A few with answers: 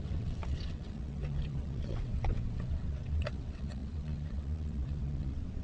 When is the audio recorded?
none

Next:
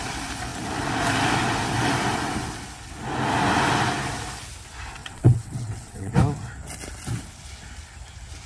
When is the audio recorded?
0.0-5.0; 6.1-8.5

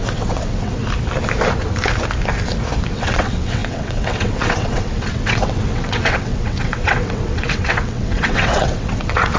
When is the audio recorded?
0.8-2.9

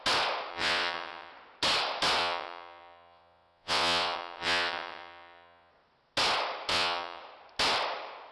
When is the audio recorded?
0.0-0.5; 1.3-2.2; 5.7-6.7; 7.2-8.3

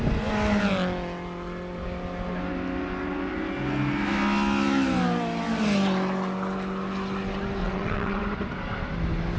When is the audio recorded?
0.0-7.6; 8.2-9.4

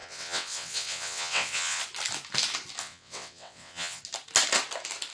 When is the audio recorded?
1.8-2.8; 4.0-5.1

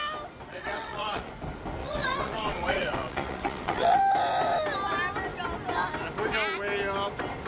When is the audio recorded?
0.0-0.5; 1.3-1.8; 4.0-7.5

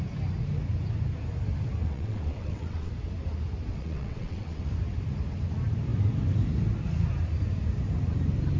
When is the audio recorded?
0.0-1.8; 2.9-3.7; 4.7-8.6